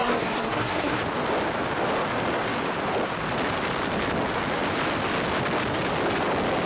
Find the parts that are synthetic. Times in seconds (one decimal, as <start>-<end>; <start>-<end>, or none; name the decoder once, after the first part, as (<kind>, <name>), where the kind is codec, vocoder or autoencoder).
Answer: 0.0-1.0 (codec, SNAC)